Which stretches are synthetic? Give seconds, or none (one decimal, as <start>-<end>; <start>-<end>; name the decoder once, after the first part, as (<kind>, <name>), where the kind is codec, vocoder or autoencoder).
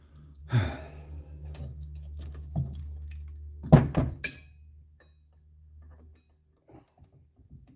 0.4-2.8 (codec, DAC)